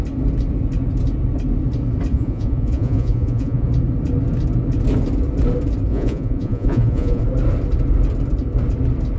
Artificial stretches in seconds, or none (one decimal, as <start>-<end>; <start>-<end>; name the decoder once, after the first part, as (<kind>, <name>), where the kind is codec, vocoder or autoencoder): 2.1-3.7 (vocoder, Vocos); 5.9-7.2